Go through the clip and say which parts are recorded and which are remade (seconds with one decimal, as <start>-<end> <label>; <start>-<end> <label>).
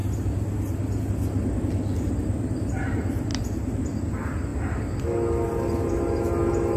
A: 0.0-6.8 recorded